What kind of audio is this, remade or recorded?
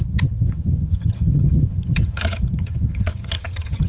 remade